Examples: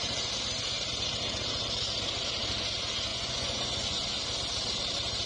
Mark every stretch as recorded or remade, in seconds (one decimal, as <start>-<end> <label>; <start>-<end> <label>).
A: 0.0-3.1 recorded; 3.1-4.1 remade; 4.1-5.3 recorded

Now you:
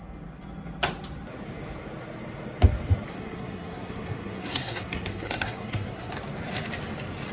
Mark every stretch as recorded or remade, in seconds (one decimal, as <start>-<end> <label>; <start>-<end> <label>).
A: 0.0-3.1 recorded; 3.1-6.1 remade; 6.1-7.3 recorded

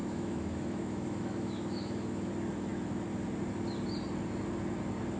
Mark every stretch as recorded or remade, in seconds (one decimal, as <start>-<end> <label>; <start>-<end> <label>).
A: 0.0-2.3 remade; 2.3-5.2 recorded